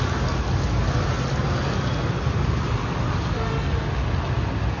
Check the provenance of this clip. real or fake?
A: real